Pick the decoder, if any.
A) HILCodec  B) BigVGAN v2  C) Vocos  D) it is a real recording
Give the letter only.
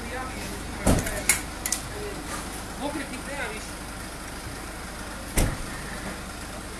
D